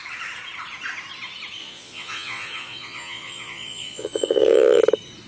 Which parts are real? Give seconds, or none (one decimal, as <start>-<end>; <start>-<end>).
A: 0.0-1.6; 4.8-5.3